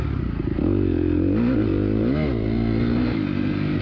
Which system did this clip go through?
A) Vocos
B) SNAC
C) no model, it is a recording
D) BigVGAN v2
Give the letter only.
C